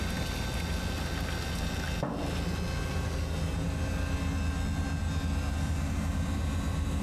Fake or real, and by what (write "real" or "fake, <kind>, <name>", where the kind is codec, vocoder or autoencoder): real